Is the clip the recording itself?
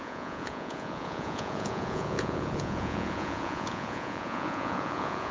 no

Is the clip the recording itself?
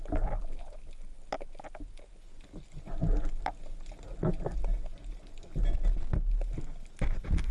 yes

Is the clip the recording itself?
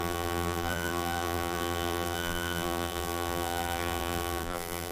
no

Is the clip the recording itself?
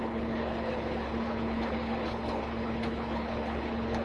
no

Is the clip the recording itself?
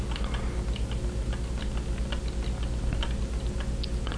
yes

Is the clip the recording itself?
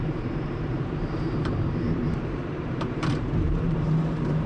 no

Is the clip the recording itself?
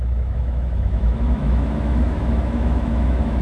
no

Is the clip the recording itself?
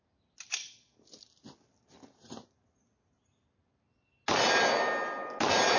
yes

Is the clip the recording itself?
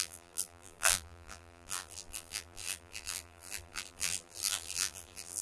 no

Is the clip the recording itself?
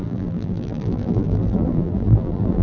no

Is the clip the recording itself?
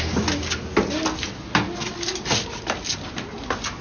yes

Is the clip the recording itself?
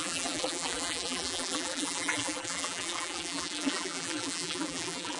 no